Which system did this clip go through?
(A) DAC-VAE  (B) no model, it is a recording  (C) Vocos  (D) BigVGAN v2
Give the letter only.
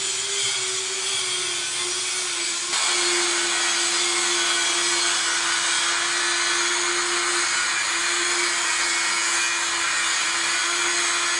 B